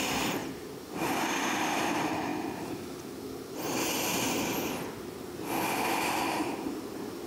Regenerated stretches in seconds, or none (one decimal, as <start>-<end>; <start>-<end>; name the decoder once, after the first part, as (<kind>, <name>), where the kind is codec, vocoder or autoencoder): 0.0-2.3 (vocoder, BigVGAN v2); 6.2-7.3